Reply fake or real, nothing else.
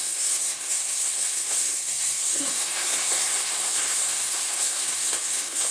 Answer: fake